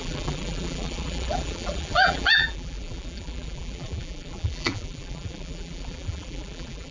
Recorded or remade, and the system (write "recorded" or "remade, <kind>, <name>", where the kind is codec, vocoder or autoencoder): remade, vocoder, BigVGAN v2